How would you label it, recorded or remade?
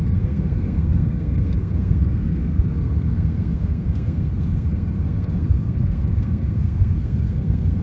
remade